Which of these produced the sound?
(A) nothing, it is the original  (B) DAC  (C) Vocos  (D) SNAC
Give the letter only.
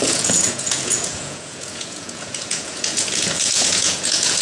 C